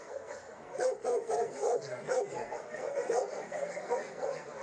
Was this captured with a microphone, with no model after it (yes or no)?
no